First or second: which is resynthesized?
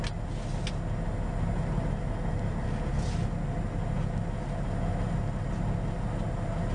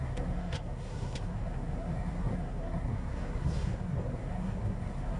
second